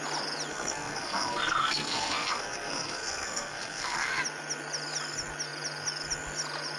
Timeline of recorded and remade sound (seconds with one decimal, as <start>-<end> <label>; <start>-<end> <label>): 0.0-0.5 recorded; 0.5-4.2 remade; 4.2-6.8 recorded